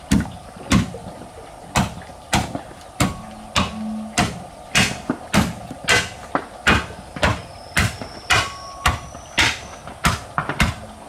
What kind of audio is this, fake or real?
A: real